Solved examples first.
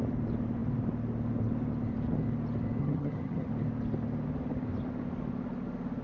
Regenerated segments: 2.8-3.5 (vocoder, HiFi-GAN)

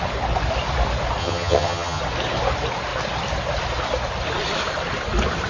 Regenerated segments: 1.2-2.0 (vocoder, HiFi-GAN)